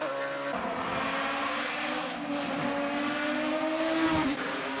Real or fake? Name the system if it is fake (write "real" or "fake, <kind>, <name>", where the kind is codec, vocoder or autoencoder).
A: real